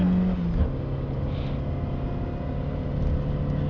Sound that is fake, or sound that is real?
real